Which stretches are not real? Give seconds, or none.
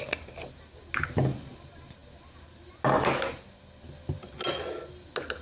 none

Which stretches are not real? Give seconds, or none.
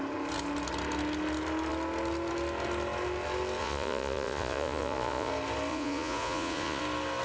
3.6-5.3 (vocoder, Vocos); 5.7-6.8